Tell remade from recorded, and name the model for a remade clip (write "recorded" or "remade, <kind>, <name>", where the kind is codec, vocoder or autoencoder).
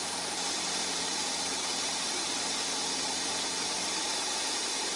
remade, vocoder, BigVGAN v2